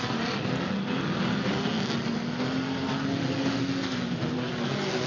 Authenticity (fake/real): real